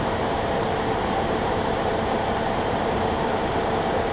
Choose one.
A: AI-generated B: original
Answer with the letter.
A